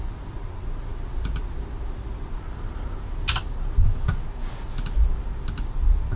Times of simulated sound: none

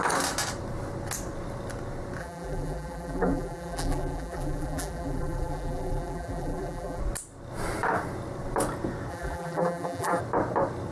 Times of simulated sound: 2.2-7.0 (vocoder, BigVGAN v2); 9.1-10.2